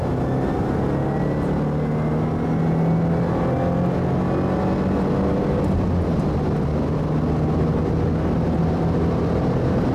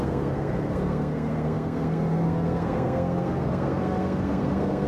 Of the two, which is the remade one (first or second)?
second